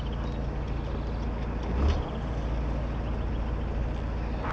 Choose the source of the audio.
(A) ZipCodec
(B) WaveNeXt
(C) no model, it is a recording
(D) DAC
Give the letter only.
C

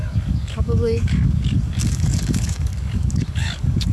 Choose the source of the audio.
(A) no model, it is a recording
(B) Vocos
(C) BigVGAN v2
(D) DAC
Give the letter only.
D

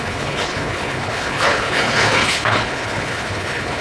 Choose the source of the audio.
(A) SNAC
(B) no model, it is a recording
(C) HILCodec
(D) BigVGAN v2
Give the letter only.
C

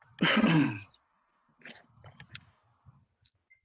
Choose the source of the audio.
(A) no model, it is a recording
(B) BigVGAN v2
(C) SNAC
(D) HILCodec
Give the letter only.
A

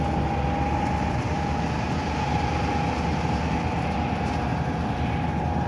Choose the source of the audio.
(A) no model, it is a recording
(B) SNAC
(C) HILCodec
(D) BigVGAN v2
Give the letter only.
A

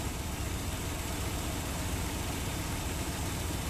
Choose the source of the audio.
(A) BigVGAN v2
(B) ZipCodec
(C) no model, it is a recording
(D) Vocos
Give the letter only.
A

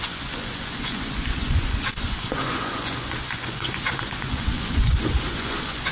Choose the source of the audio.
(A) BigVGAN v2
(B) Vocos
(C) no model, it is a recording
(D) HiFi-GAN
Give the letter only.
B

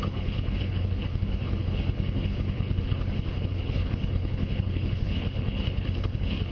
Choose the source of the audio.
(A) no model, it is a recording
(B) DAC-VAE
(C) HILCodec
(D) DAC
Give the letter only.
C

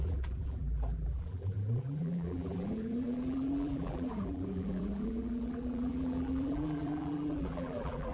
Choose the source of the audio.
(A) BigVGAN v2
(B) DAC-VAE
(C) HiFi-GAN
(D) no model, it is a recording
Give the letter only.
A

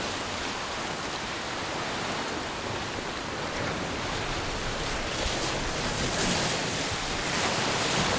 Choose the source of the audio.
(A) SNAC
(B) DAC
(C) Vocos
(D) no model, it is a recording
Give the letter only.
D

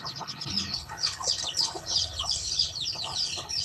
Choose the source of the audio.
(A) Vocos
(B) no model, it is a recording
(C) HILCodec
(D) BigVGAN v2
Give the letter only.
C